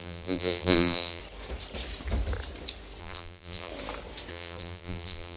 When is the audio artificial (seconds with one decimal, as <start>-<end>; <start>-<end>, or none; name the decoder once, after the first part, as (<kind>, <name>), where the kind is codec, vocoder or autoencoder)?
0.0-1.2 (vocoder, BigVGAN v2); 3.0-3.7; 4.3-5.4